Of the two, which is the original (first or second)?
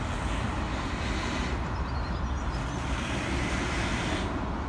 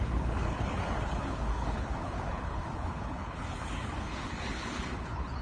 first